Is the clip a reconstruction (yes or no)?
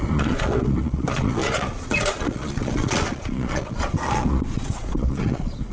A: yes